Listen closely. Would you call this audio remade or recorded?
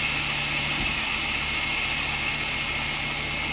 recorded